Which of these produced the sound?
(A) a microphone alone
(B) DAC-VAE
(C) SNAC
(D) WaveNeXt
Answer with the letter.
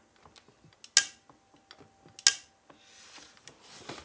A